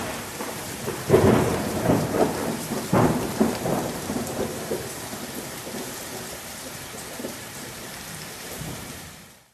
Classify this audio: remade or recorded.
remade